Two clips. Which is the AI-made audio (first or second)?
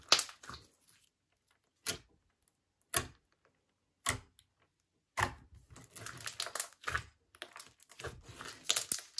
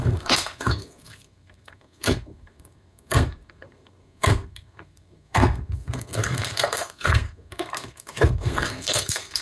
second